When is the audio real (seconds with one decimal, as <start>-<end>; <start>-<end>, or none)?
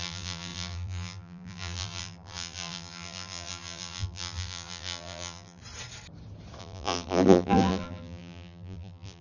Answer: 5.6-6.6